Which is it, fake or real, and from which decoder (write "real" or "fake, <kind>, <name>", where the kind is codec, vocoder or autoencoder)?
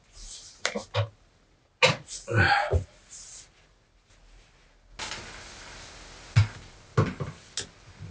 real